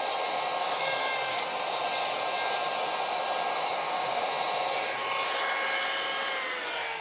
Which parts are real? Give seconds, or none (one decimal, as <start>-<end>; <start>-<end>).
0.0-0.6; 1.6-3.7; 4.2-7.0